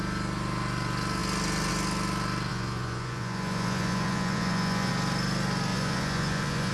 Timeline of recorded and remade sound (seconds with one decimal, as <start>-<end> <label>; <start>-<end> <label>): 0.0-2.5 recorded; 2.5-4.9 remade; 4.9-5.7 recorded; 5.7-6.7 remade